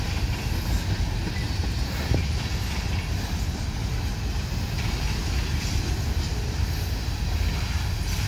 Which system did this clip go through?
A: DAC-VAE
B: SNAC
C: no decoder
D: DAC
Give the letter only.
C